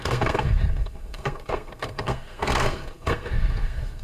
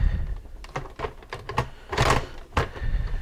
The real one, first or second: second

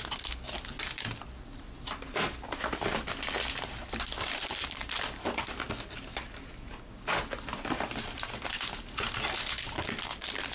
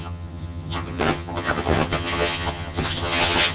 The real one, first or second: first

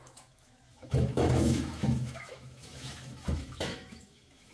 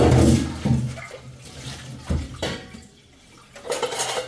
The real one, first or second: second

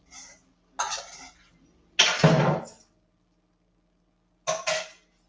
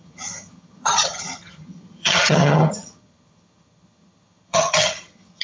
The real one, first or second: first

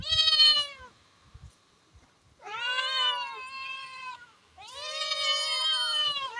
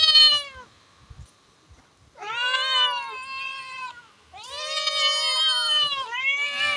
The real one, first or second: second